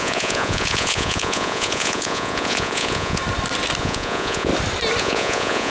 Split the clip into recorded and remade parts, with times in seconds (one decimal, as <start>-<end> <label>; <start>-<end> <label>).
0.0-3.2 remade; 3.2-3.8 recorded; 3.8-4.5 remade; 4.5-5.0 recorded; 5.0-5.7 remade